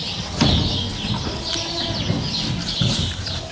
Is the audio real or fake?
real